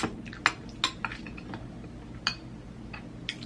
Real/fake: real